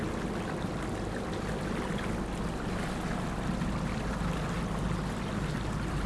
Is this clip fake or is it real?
real